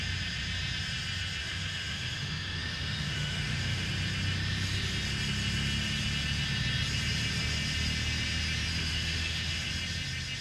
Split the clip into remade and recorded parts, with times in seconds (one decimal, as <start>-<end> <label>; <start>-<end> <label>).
0.0-1.4 recorded; 1.4-3.9 remade; 3.9-8.8 recorded; 8.8-9.7 remade; 9.7-10.4 recorded